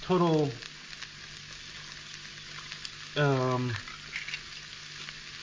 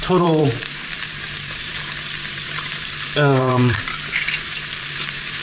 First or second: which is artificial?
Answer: second